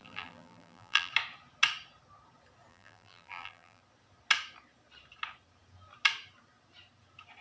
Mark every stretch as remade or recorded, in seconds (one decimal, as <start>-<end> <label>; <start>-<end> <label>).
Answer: 0.0-1.1 remade; 1.1-2.7 recorded; 2.7-3.8 remade; 3.8-7.4 recorded